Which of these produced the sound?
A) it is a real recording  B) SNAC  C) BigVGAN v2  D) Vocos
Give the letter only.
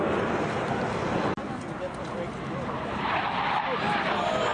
A